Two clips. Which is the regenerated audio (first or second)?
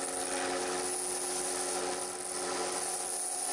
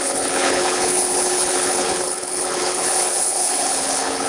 second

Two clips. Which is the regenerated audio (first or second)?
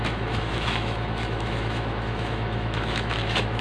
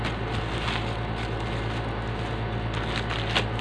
first